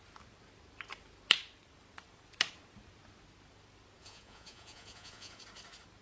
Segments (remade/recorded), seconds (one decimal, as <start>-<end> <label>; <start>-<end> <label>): 0.0-4.0 recorded; 4.0-5.4 remade; 5.4-6.0 recorded